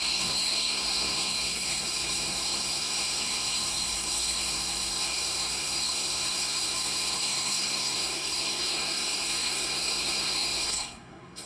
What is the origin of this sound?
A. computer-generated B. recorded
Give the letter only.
A